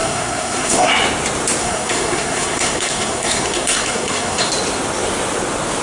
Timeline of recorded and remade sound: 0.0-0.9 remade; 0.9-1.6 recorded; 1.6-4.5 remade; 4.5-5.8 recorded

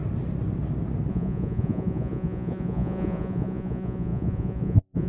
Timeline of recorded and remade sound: 0.0-1.1 recorded; 1.1-5.1 remade

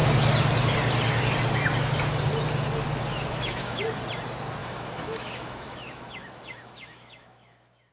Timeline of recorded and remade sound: 0.0-3.1 recorded; 3.1-3.9 remade; 3.9-4.6 recorded; 4.6-7.9 remade

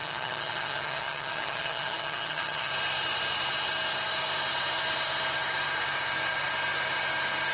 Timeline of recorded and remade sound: 0.0-2.7 remade; 2.7-7.5 recorded

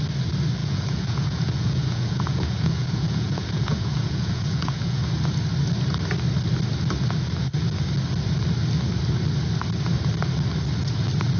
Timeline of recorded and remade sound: 0.0-0.6 recorded; 0.6-5.1 remade; 5.1-11.4 recorded